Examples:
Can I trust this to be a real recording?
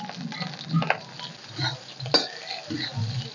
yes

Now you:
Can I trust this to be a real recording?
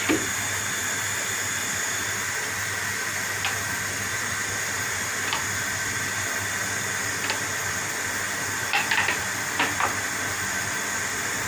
yes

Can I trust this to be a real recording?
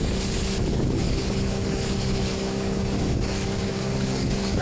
no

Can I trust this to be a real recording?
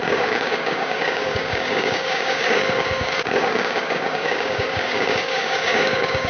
no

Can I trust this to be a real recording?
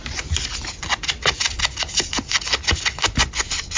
yes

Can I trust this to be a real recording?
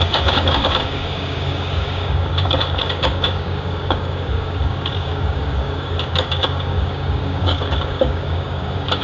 no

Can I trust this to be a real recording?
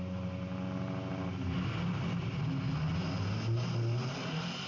yes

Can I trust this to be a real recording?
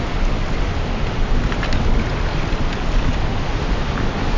yes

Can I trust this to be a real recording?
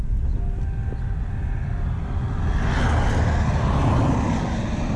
yes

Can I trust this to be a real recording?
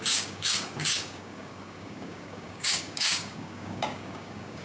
no